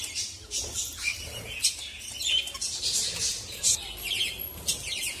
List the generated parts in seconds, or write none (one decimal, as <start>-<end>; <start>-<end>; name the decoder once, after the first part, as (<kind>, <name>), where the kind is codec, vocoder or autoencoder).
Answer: 3.3-4.1 (vocoder, BigVGAN v2)